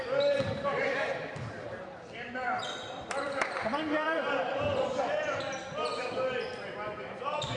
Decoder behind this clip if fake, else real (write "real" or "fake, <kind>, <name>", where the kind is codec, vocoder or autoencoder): fake, vocoder, BigVGAN v2